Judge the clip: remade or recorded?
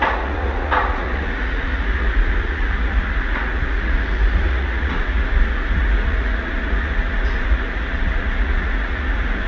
remade